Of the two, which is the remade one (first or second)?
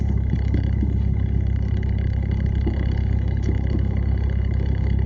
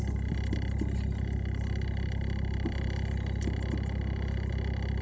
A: first